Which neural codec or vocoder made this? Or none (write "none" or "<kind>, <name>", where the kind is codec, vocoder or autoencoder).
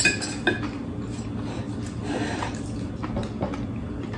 none